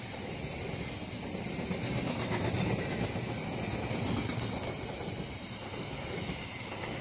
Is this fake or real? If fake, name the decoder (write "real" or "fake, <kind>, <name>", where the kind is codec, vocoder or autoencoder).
real